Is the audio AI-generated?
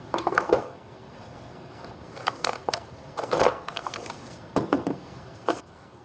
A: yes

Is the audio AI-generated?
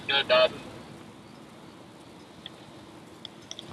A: no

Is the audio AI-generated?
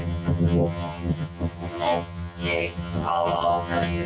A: yes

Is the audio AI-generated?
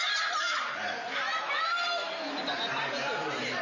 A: no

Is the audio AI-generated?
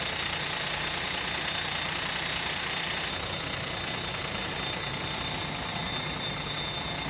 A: no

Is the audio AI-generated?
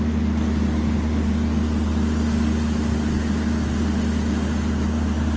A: no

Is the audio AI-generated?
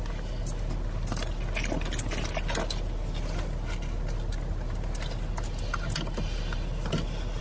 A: no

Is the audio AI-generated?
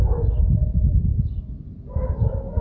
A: no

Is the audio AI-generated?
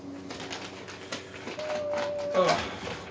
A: no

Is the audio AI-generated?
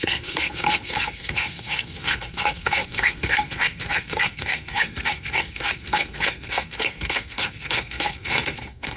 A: yes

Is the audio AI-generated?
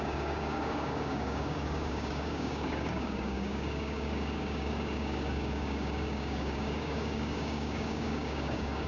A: yes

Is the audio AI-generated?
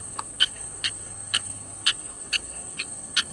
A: yes